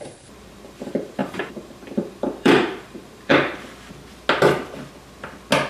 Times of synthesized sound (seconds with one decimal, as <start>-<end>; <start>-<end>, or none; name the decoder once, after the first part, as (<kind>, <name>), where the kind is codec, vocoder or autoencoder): 0.0-3.3 (vocoder, BigVGAN v2)